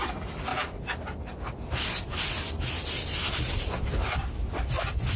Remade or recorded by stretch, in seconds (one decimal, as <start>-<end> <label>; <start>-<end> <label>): 0.0-3.1 recorded; 3.1-4.5 remade; 4.5-5.2 recorded